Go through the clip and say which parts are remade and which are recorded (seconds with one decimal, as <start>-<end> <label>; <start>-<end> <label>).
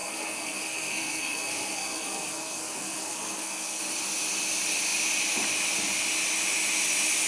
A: 0.0-3.8 remade; 3.8-7.3 recorded